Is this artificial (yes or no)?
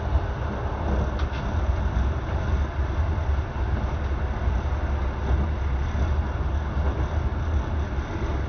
no